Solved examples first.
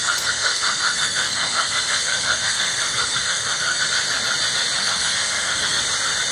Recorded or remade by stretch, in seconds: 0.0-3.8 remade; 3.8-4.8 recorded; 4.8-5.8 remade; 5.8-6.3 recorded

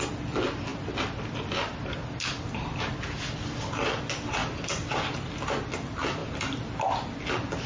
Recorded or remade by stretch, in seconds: 0.0-7.7 recorded

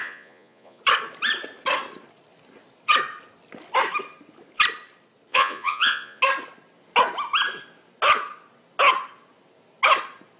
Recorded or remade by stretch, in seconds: 0.0-0.8 remade; 0.8-5.3 recorded; 5.3-6.2 remade; 6.2-10.4 recorded

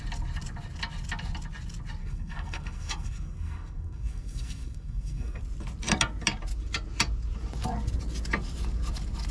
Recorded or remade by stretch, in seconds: 0.0-2.0 recorded; 2.0-5.4 remade; 5.4-9.3 recorded

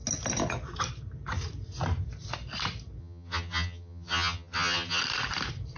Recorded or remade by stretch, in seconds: 0.0-3.0 recorded; 3.0-5.0 remade; 5.0-5.8 recorded